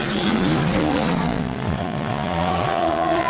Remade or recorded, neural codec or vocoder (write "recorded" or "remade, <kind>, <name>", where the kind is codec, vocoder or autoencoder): remade, vocoder, Vocos